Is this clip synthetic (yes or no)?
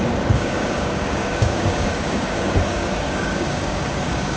yes